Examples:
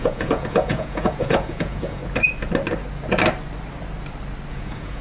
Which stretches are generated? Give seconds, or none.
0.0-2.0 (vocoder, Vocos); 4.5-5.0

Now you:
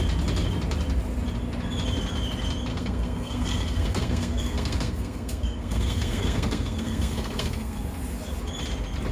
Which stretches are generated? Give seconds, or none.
2.7-7.8 (codec, SNAC)